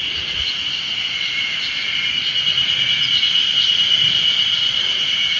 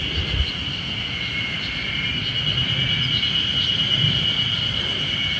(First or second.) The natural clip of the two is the second